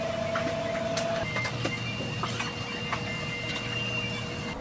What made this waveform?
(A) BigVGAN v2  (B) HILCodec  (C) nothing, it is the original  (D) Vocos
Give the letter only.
C